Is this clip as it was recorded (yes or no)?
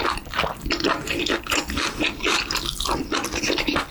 yes